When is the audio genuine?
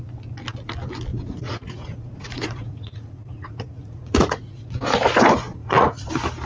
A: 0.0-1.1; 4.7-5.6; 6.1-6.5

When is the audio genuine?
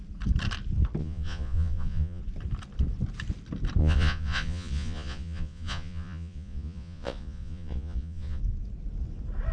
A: 0.0-1.0; 2.2-3.8; 8.4-9.5